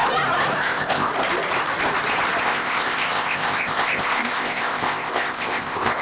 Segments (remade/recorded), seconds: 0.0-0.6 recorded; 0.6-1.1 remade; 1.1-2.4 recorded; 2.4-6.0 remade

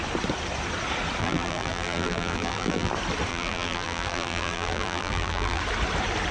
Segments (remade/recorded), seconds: 0.0-1.2 recorded; 1.2-2.9 remade; 2.9-3.3 recorded; 3.3-5.6 remade; 5.6-6.3 recorded

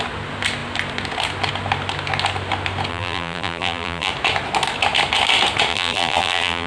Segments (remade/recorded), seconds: 0.0-2.9 recorded; 2.9-4.1 remade; 4.1-5.7 recorded; 5.7-6.7 remade

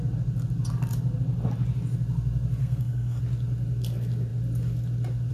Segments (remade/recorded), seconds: 0.0-2.6 recorded; 2.6-3.2 remade; 3.2-5.3 recorded

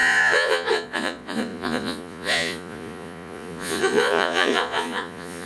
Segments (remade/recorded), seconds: 0.0-5.5 remade

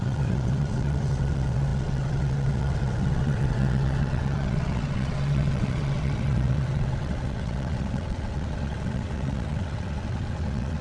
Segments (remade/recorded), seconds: 0.0-10.8 remade

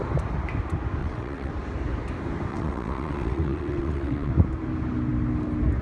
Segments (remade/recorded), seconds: 0.0-1.0 recorded; 1.0-1.5 remade; 1.5-2.5 recorded; 2.5-4.3 remade; 4.3-5.8 recorded